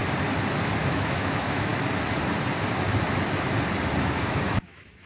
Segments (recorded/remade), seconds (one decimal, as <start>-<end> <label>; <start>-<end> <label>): 0.0-0.8 recorded; 0.8-1.7 remade; 1.7-4.0 recorded; 4.0-5.0 remade